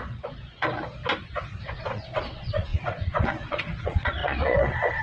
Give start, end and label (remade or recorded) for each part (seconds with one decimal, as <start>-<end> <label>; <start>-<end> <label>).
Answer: 0.0-1.0 remade; 1.0-1.6 recorded; 1.6-5.0 remade